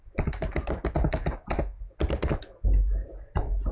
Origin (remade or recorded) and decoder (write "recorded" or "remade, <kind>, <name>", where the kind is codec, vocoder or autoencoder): recorded